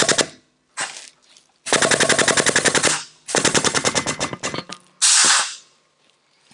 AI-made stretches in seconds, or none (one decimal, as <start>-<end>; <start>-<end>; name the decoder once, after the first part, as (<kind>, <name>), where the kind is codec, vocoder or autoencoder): 5.2-6.5 (vocoder, BigVGAN v2)